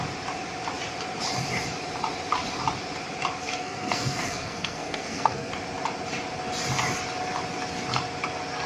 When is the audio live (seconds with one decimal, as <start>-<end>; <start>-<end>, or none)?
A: 0.0-3.4; 5.5-8.7